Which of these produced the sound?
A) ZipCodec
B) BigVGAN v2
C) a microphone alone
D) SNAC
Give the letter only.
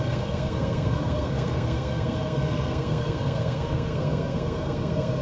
D